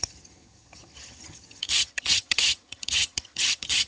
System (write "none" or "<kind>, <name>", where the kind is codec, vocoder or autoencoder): vocoder, HiFi-GAN